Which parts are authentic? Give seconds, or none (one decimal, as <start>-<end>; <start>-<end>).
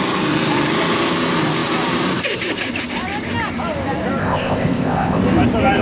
0.0-4.2; 5.2-5.8